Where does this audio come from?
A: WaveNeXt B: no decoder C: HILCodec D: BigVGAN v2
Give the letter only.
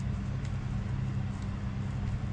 B